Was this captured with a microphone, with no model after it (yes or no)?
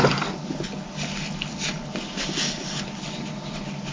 yes